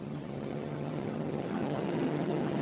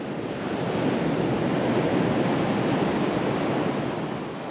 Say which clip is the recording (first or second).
second